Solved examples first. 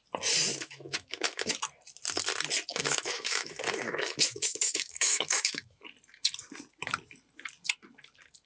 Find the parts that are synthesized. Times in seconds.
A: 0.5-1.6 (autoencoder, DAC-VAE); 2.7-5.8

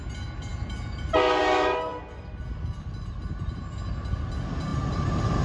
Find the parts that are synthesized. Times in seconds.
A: 4.7-5.4 (vocoder, BigVGAN v2)

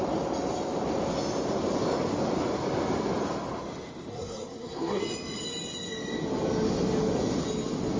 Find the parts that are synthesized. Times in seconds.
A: 4.1-5.0 (codec, SNAC)

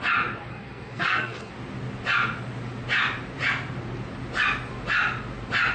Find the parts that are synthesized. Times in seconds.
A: 0.5-1.5 (codec, SNAC)